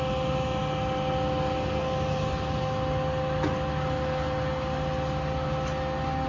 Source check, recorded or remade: recorded